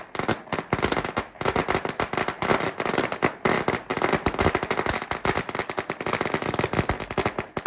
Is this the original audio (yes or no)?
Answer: yes